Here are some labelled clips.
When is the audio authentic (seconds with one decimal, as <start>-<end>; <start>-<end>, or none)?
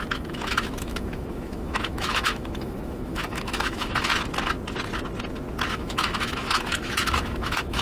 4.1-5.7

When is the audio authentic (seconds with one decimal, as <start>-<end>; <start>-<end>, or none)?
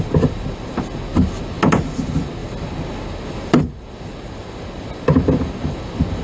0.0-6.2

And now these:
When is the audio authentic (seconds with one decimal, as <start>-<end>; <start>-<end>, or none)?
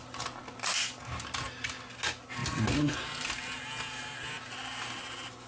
0.0-5.5